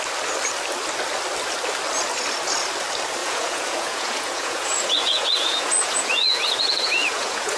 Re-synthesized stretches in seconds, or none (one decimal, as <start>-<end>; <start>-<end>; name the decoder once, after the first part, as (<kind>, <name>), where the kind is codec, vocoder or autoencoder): 3.2-7.6 (vocoder, Vocos)